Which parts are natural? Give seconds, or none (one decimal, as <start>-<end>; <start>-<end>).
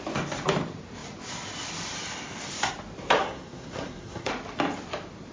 0.0-3.2; 4.3-5.3